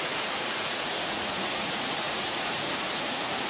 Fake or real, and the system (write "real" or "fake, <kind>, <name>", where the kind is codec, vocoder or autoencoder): fake, vocoder, Vocos